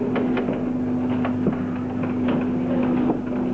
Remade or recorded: recorded